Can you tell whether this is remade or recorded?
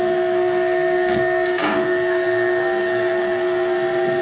remade